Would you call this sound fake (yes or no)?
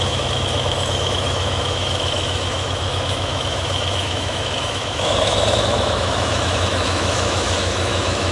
yes